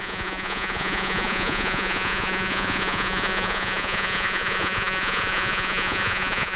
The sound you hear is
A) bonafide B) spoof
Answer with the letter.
B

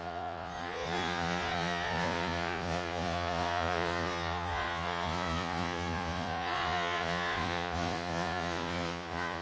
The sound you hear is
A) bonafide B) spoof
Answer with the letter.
B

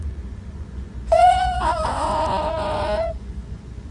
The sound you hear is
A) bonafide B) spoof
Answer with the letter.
B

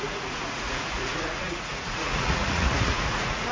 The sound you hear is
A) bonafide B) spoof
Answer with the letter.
B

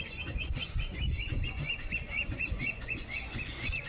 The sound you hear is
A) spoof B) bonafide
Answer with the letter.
A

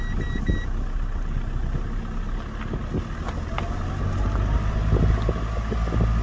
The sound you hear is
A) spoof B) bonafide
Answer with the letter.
B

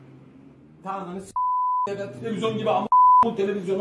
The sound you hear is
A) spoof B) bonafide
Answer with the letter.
B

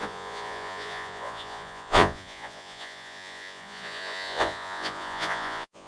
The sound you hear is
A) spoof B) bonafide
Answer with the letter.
A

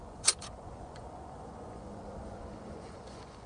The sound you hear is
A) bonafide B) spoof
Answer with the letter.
B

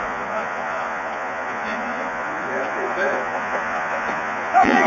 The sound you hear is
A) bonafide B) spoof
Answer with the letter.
B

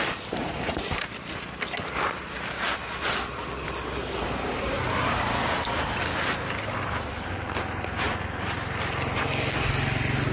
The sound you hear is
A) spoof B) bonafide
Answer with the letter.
B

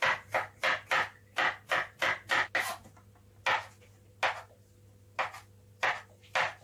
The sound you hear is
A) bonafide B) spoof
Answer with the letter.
A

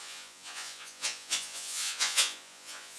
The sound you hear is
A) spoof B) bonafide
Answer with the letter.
A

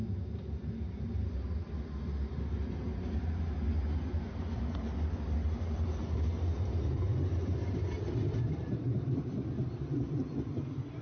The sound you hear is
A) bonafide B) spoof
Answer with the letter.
A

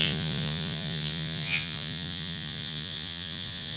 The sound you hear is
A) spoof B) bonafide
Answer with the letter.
A